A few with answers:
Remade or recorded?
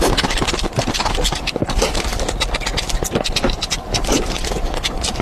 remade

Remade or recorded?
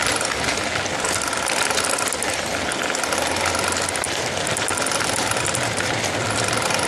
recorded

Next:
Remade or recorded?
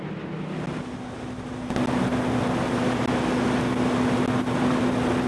recorded